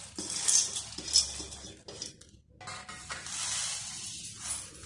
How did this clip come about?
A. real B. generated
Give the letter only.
A